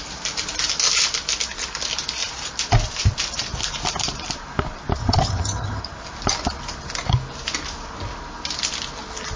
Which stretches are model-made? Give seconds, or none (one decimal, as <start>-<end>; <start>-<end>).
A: 5.0-5.8